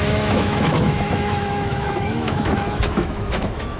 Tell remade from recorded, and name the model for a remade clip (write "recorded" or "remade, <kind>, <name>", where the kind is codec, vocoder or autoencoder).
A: remade, autoencoder, DAC-VAE